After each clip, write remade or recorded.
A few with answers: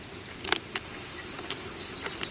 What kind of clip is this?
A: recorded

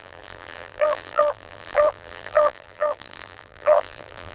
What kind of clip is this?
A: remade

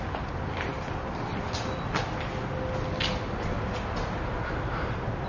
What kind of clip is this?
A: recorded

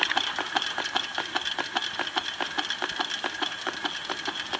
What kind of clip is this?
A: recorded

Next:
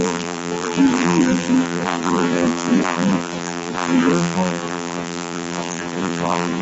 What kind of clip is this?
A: remade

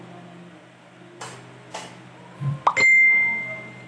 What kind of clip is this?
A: recorded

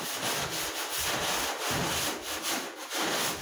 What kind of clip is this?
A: recorded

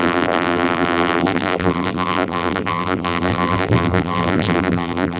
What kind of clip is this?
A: remade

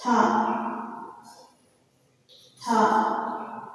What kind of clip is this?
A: recorded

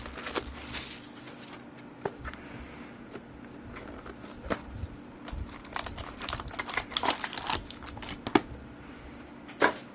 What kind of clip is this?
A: recorded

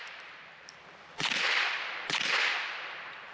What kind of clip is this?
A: remade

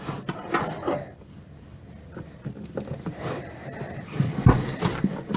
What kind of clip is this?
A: remade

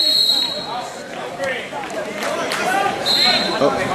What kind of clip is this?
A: remade